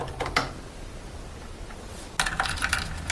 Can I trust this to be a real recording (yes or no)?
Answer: yes